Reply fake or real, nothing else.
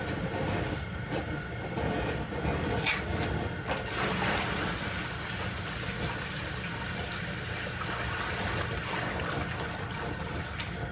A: real